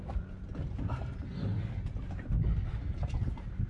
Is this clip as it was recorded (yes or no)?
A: yes